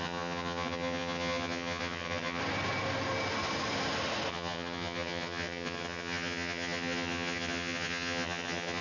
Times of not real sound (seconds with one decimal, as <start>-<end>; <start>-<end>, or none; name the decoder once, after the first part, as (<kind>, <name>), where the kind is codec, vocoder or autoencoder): 0.0-2.4 (vocoder, HiFi-GAN); 4.3-8.8